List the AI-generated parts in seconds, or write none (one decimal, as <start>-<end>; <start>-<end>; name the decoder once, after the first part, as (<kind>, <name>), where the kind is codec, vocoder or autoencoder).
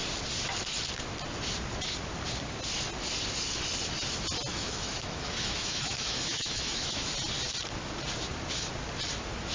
4.5-7.1 (autoencoder, DAC-VAE)